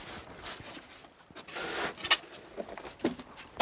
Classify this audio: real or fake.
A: real